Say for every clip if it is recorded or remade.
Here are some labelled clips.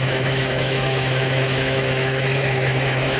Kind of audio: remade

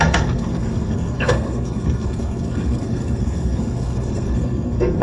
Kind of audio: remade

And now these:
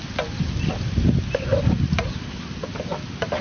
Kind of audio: recorded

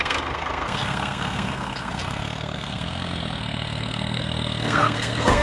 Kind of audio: remade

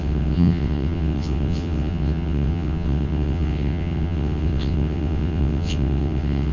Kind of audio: remade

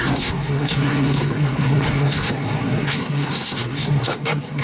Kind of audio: remade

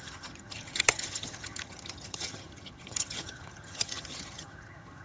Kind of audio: remade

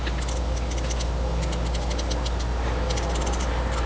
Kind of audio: recorded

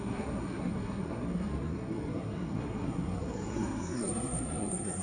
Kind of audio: remade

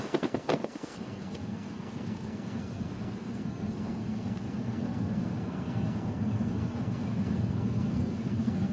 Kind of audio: remade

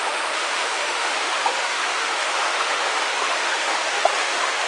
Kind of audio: remade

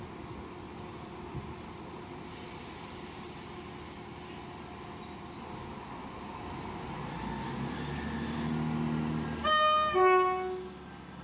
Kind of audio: recorded